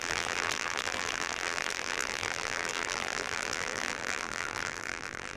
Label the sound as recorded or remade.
remade